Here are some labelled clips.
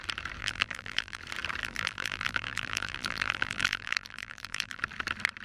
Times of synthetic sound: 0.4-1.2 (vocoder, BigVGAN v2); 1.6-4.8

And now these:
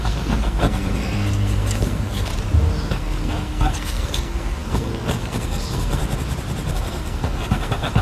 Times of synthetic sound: 0.0-2.3 (codec, SNAC); 2.9-6.0; 6.7-8.0